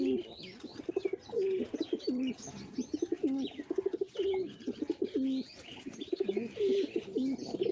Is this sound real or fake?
real